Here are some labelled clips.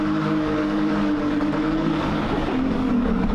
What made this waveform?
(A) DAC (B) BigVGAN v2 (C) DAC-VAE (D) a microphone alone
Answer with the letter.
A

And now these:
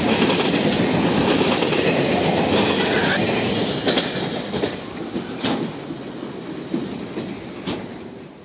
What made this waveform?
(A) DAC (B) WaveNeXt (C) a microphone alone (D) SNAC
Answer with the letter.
C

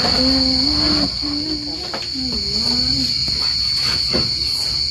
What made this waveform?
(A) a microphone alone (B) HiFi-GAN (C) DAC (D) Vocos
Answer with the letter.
A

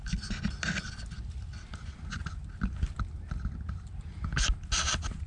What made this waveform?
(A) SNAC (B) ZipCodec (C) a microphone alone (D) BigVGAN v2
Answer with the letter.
C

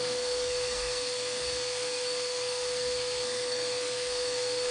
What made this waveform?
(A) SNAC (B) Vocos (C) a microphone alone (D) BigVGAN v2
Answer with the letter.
A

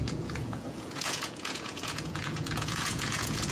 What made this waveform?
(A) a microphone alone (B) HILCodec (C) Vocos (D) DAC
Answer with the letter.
C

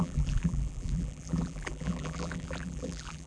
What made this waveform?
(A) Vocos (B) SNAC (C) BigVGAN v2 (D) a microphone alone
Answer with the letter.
C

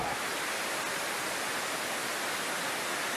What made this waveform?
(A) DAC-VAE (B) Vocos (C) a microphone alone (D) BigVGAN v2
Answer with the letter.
C